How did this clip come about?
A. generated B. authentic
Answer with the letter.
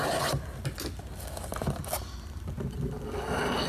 B